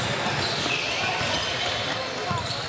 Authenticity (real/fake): fake